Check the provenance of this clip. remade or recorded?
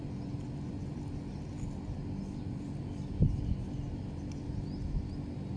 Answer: recorded